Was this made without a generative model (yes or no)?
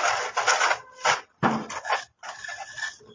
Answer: yes